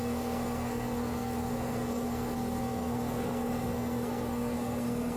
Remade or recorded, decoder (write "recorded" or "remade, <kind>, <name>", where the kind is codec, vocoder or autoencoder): remade, codec, SNAC